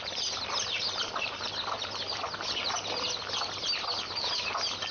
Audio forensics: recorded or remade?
recorded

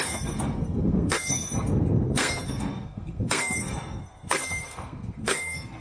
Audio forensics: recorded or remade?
remade